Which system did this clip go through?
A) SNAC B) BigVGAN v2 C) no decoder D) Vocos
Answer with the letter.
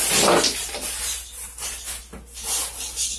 C